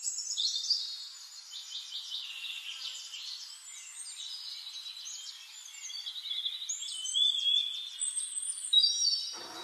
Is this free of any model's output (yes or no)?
yes